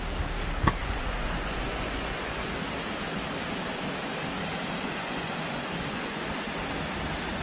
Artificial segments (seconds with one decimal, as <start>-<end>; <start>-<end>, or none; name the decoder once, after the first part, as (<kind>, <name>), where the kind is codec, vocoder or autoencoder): 0.8-2.5 (vocoder, Vocos); 4.8-6.3